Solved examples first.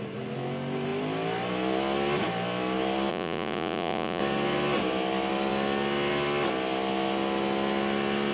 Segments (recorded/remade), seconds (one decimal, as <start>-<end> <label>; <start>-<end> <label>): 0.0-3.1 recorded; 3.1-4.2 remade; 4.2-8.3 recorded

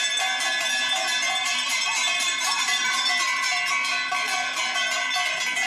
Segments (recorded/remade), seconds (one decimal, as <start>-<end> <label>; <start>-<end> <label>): 0.0-1.4 recorded; 1.4-3.7 remade; 3.7-5.7 recorded

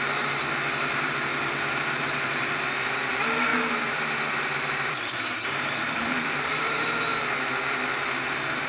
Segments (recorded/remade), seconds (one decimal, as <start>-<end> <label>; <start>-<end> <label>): 0.0-1.3 remade; 1.3-2.0 recorded; 2.0-7.1 remade; 7.1-8.7 recorded

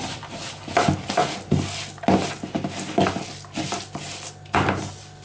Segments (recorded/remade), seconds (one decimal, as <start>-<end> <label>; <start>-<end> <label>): 0.0-5.2 recorded

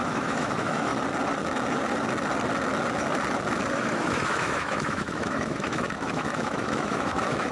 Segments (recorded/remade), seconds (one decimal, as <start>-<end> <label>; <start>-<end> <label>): 0.0-0.9 remade; 0.9-3.7 recorded; 3.7-7.5 remade

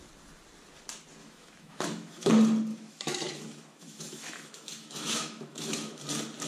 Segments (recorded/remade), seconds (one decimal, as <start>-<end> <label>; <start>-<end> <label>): 0.0-1.2 recorded; 1.2-2.3 remade; 2.3-2.7 recorded; 2.7-6.0 remade; 6.0-6.5 recorded